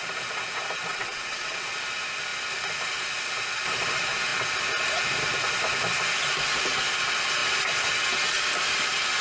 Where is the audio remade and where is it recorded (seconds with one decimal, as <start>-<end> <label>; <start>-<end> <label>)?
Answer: 0.0-0.9 recorded; 0.9-1.7 remade; 1.7-9.2 recorded